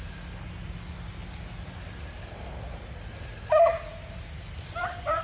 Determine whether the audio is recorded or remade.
recorded